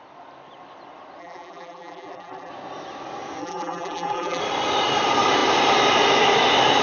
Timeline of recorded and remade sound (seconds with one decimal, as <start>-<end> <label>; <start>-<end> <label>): 0.0-1.2 recorded; 1.2-2.5 remade; 2.5-3.4 recorded; 3.4-4.4 remade; 4.4-6.8 recorded